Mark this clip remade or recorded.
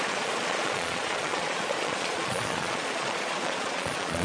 remade